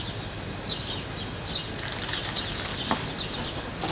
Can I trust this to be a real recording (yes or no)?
yes